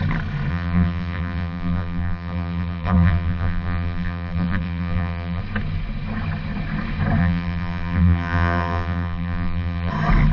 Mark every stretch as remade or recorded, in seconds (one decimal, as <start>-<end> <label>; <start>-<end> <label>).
0.0-0.5 recorded; 0.5-5.4 remade; 5.4-7.2 recorded; 7.2-9.9 remade; 9.9-10.3 recorded